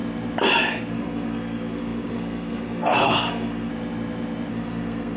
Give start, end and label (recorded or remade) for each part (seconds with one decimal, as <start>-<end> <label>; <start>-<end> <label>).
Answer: 0.0-0.9 recorded; 0.9-3.7 remade; 3.7-4.5 recorded; 4.5-5.2 remade